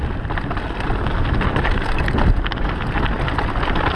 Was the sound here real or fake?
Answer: real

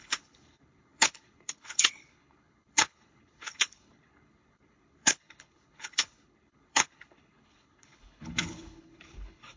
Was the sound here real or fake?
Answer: fake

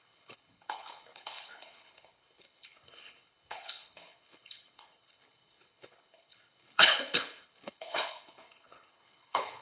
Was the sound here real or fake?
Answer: fake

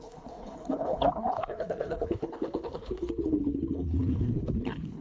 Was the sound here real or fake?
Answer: fake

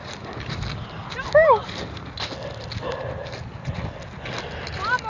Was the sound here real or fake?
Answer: real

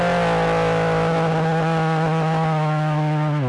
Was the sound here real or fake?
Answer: real